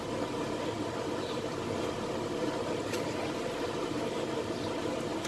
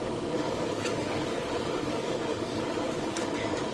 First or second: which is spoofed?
second